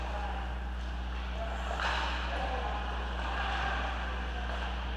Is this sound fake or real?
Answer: real